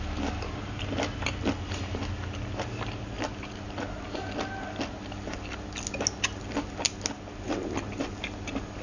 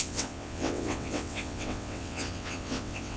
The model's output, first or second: second